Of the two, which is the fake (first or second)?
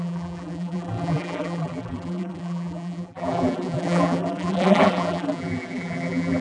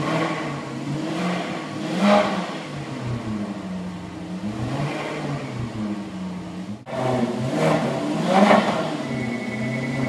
first